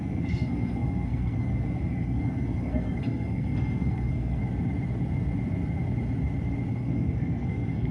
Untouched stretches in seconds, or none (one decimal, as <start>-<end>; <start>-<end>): 4.4-6.7